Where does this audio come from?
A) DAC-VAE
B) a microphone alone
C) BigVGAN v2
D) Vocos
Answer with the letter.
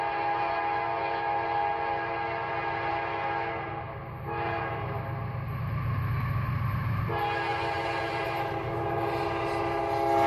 B